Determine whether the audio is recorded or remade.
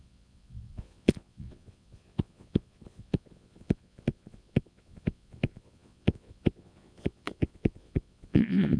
remade